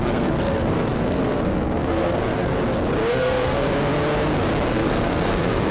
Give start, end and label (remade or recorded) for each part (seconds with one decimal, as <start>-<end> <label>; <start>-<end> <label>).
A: 0.0-2.5 remade; 2.5-3.1 recorded; 3.1-3.7 remade; 3.7-4.7 recorded; 4.7-5.7 remade